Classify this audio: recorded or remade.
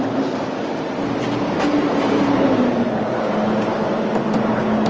recorded